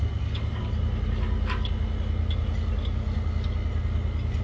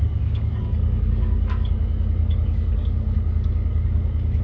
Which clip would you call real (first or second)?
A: first